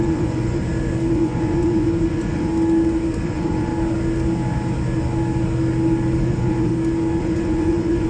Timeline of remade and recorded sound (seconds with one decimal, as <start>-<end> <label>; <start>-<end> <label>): 0.0-0.6 remade; 0.6-1.1 recorded; 1.1-2.5 remade; 2.5-3.2 recorded; 3.2-3.7 remade; 3.7-6.2 recorded; 6.2-6.7 remade; 6.7-7.2 recorded; 7.2-8.1 remade

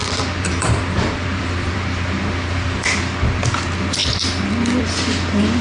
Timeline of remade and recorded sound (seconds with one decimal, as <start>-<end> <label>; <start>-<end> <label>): 0.0-3.4 remade; 3.4-5.6 recorded

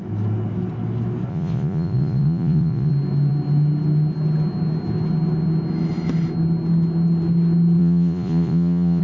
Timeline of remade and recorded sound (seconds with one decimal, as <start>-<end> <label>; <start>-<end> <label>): 0.0-1.3 recorded; 1.3-2.9 remade; 2.9-7.8 recorded; 7.8-9.0 remade